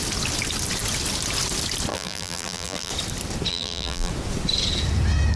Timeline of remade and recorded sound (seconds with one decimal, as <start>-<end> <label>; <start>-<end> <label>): 0.0-1.9 recorded; 1.9-2.9 remade; 2.9-3.5 recorded; 3.5-4.1 remade; 4.1-5.4 recorded